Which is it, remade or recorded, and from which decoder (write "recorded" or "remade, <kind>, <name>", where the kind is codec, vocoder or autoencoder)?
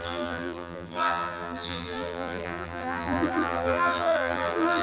remade, vocoder, BigVGAN v2